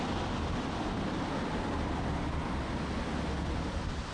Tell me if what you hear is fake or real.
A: real